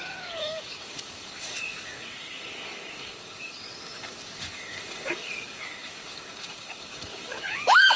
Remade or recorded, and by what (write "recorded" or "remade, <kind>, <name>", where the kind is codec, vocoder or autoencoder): remade, codec, DAC